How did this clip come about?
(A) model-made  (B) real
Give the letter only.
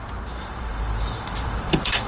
A